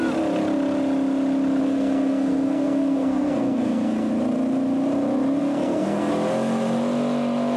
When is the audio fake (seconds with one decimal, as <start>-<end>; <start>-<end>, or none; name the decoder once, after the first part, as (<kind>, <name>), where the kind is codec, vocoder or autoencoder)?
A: 1.6-4.1 (codec, SNAC); 5.4-6.1